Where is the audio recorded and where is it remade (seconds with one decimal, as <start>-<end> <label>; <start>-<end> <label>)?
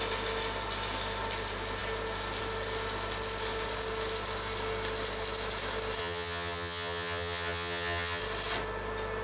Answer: 0.0-6.0 recorded; 6.0-8.2 remade; 8.2-9.2 recorded